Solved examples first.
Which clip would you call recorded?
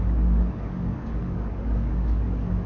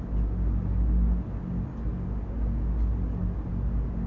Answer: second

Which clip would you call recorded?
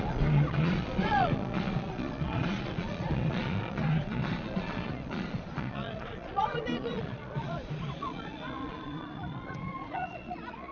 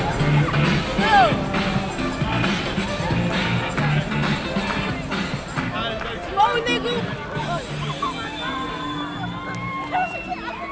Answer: second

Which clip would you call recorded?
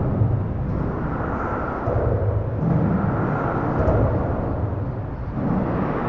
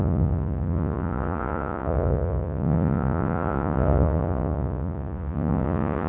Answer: first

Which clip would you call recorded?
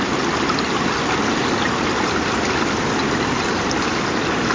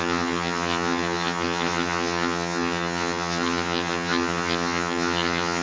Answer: first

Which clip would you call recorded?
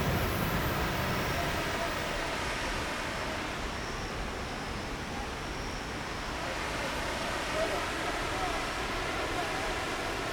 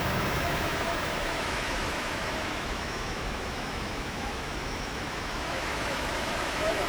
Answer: first